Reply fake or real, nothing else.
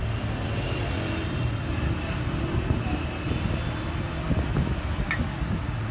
real